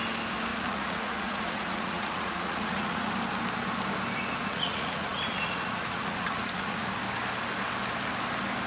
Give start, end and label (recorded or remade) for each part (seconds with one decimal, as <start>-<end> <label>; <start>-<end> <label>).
0.0-0.5 recorded; 0.5-3.1 remade; 3.1-4.4 recorded; 4.4-7.0 remade; 7.0-8.7 recorded